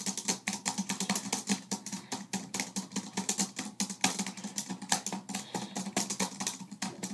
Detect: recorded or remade recorded